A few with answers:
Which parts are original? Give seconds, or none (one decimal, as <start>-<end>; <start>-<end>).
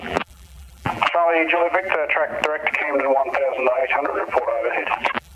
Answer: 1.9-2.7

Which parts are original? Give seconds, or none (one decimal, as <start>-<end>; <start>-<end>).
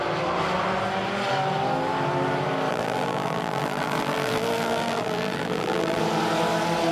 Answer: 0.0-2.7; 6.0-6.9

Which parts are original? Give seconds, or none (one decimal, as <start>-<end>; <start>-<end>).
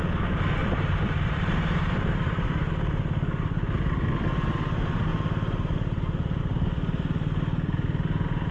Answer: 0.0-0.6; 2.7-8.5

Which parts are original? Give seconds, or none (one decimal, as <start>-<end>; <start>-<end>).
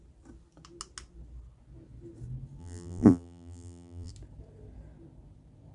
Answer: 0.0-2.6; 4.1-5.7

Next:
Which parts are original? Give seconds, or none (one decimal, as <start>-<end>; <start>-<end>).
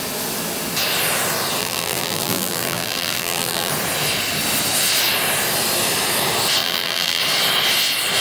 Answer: 0.0-1.6; 3.7-6.6; 7.2-8.2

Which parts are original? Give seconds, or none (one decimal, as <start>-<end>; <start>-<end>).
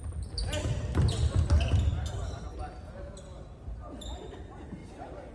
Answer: 0.0-4.8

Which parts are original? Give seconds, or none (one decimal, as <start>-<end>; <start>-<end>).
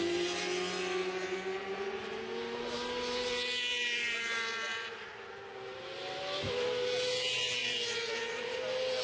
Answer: 0.0-3.7; 5.1-7.6; 8.2-9.0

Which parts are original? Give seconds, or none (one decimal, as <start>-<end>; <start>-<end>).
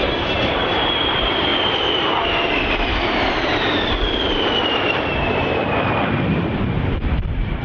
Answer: 1.5-5.8